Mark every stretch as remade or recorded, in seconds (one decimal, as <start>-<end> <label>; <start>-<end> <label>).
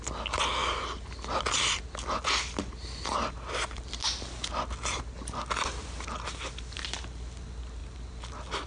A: 0.0-8.7 recorded